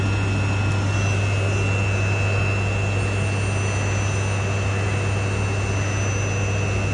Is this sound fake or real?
real